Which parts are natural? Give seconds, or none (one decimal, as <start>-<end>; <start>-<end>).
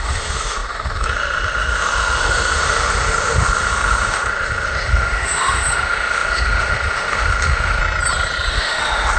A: 7.8-8.5